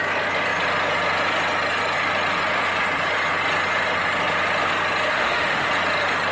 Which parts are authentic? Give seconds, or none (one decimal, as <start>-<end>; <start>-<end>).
0.0-5.1; 5.7-6.3